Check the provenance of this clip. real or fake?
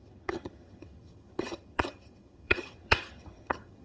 fake